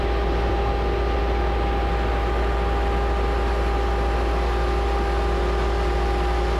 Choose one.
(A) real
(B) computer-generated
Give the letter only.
A